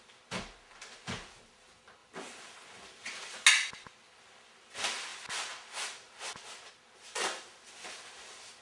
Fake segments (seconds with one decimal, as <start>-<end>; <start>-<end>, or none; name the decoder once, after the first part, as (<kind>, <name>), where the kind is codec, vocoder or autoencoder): none